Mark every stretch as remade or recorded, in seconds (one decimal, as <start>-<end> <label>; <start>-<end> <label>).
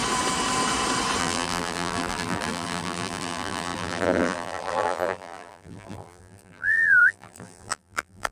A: 0.0-1.2 recorded; 1.2-8.3 remade